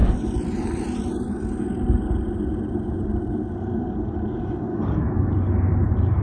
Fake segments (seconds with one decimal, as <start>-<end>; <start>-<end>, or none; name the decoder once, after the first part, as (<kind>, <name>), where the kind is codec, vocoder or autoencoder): 4.7-5.3 (codec, DAC)